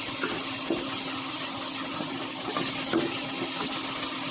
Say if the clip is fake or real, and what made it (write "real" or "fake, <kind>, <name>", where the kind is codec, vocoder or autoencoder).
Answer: real